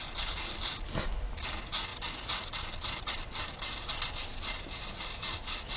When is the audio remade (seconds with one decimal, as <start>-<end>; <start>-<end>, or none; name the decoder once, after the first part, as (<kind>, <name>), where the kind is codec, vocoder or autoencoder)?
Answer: none